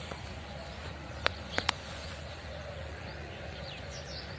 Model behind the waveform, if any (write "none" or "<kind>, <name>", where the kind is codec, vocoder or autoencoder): vocoder, Vocos